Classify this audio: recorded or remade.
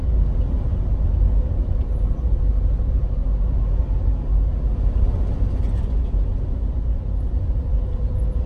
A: recorded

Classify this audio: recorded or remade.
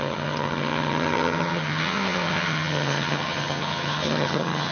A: remade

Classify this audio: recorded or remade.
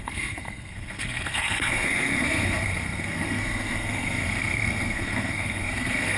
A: remade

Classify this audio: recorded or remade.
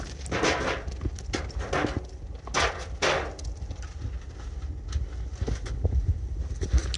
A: recorded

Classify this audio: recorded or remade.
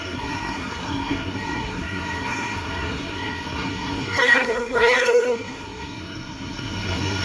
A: remade